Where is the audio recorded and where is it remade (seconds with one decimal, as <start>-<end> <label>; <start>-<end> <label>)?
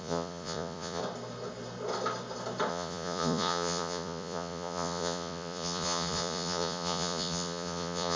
0.0-1.0 remade; 1.0-2.7 recorded; 2.7-8.2 remade